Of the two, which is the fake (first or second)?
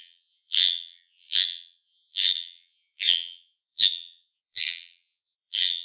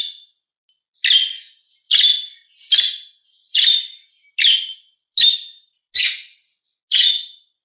first